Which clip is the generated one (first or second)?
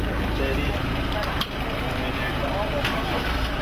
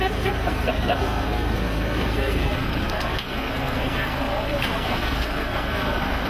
second